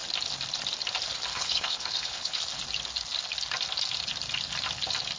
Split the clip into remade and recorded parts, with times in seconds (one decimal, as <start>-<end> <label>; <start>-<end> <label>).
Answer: 0.0-1.3 recorded; 1.3-2.4 remade; 2.4-5.2 recorded